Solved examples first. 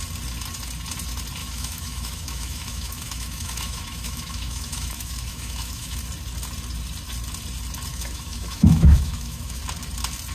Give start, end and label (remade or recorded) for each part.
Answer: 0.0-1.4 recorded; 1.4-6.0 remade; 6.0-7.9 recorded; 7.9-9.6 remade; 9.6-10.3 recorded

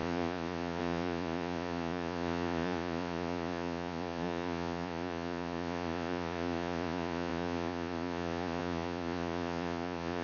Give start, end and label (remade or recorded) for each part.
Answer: 0.0-10.2 remade

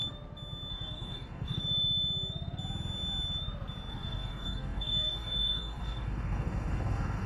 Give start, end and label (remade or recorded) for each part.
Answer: 0.0-0.7 recorded; 0.7-1.6 remade; 1.6-3.9 recorded; 3.9-7.3 remade

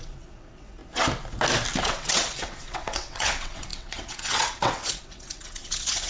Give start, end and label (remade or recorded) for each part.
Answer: 0.0-0.8 remade; 0.8-1.8 recorded; 1.8-6.1 remade